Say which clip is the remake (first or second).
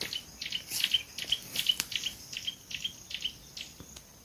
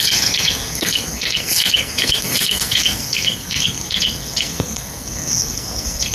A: second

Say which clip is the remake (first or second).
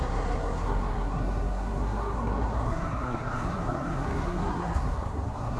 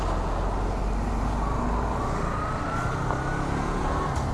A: first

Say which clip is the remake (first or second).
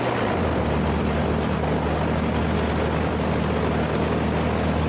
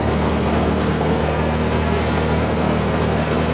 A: second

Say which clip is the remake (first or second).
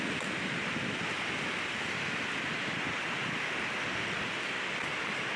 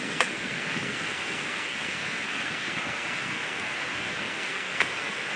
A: second